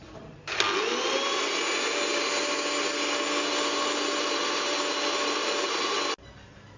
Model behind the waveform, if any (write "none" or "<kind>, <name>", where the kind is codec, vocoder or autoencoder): none